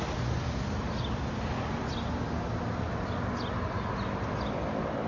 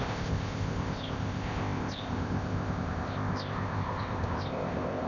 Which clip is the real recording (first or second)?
first